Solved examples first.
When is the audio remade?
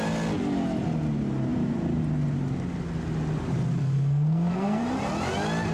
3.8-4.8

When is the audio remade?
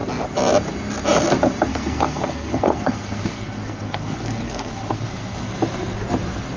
1.7-5.5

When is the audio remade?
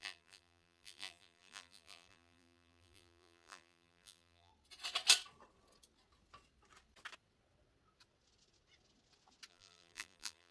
0.0-4.5; 9.5-10.5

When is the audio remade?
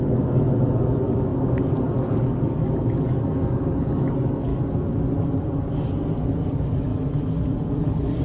0.0-4.5; 6.5-6.9; 7.7-8.2